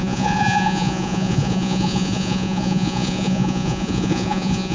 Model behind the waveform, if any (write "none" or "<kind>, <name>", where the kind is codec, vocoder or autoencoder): vocoder, Vocos